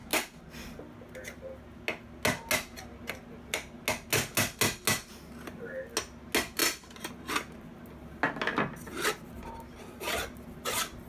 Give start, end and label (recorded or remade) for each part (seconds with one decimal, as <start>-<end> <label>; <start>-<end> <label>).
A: 0.0-6.6 recorded; 6.6-7.1 remade; 7.1-11.1 recorded